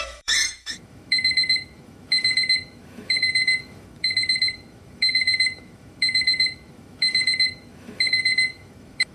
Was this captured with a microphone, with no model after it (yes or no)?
no